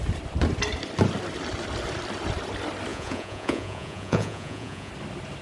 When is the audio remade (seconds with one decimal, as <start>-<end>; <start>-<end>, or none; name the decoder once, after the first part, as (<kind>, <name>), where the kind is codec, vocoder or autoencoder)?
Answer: 2.9-4.9 (vocoder, Vocos)